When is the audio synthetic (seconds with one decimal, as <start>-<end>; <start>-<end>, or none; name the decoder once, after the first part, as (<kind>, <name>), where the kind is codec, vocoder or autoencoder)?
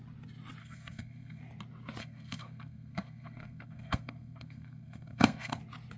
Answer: 0.6-1.4 (codec, SNAC); 2.0-5.6